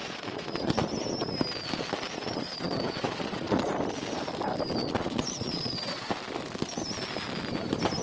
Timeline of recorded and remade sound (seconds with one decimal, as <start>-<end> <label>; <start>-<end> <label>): 0.0-0.8 remade; 0.8-2.1 recorded; 2.1-3.7 remade; 3.7-4.8 recorded; 4.8-6.1 remade; 6.1-8.0 recorded